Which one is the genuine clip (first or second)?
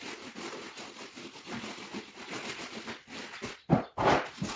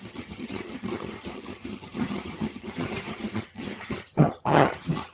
first